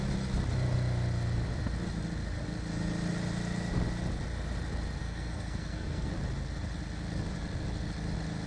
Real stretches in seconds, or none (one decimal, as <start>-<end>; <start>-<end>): 0.0-5.0; 6.1-8.5